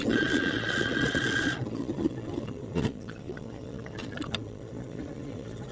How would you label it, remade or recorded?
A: remade